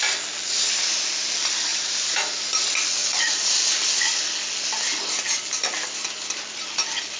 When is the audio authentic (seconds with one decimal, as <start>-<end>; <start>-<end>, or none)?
0.0-1.7; 2.4-3.0; 3.7-7.2